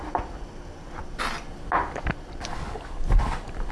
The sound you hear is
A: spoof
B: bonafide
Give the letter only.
B